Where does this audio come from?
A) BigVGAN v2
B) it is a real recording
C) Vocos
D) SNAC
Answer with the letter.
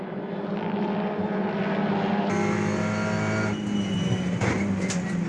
B